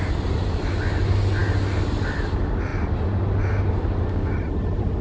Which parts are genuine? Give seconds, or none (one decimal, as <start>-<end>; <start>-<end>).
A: 0.0-5.0